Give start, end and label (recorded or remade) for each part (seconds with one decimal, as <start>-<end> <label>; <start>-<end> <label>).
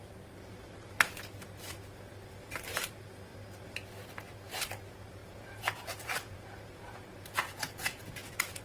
0.0-5.2 recorded; 5.2-8.6 remade